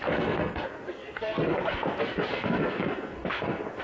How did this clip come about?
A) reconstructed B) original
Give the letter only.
A